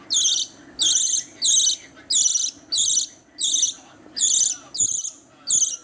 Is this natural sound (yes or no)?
yes